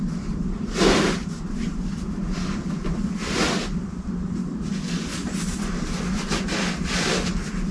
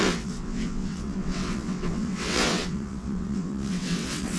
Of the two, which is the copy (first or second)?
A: second